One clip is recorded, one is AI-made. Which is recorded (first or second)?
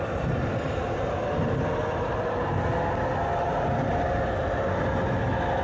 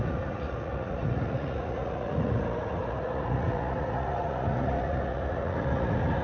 first